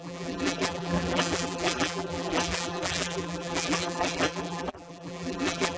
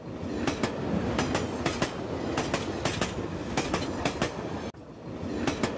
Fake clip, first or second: first